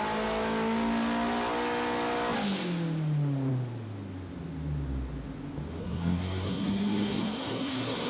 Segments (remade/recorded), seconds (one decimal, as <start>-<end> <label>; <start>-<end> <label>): 0.0-5.8 recorded; 5.8-8.1 remade